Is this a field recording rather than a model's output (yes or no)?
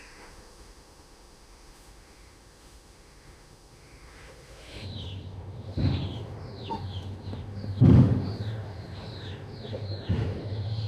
no